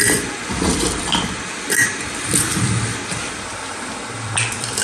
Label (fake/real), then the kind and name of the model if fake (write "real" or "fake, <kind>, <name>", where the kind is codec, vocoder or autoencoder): fake, vocoder, BigVGAN v2